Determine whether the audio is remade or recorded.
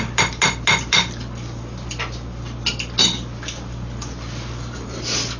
recorded